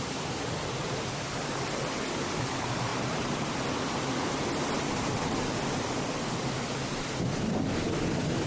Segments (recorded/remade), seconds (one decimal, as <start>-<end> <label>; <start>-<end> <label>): 0.0-2.9 recorded; 2.9-3.4 remade; 3.4-8.5 recorded

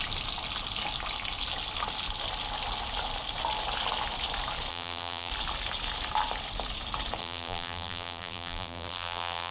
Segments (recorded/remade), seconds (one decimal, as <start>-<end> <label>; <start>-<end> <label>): 0.0-4.7 recorded; 4.7-5.3 remade; 5.3-7.2 recorded; 7.2-9.5 remade